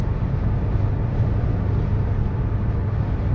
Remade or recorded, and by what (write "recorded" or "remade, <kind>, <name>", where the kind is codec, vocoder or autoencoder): recorded